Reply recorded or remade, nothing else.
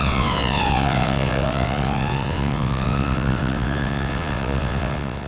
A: remade